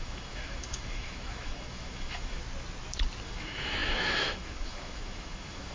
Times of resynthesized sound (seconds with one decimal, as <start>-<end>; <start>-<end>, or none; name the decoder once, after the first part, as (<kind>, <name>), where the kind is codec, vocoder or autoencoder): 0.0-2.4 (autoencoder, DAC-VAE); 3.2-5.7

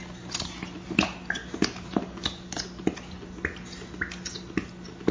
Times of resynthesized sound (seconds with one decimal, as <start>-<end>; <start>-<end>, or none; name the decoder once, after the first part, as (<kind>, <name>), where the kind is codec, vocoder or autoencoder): none

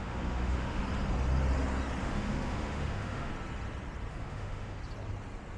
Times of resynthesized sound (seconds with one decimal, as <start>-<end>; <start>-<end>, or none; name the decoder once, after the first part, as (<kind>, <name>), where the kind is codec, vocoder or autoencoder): 0.0-0.8 (autoencoder, DAC-VAE); 2.0-3.3; 4.1-4.8